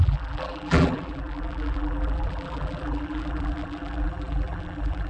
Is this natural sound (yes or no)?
no